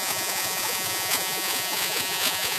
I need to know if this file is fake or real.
fake